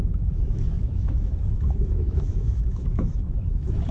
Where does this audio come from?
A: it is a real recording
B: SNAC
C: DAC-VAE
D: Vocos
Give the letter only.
C